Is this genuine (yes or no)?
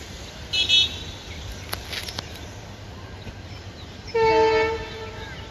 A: yes